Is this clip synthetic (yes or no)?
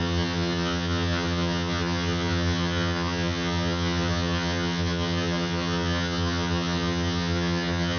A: yes